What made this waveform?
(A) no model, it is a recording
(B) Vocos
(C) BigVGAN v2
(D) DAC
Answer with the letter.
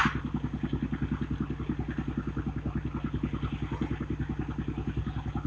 A